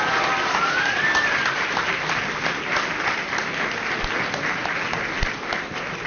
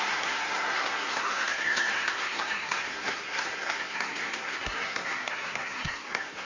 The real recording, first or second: first